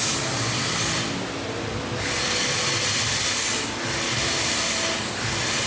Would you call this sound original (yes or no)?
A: yes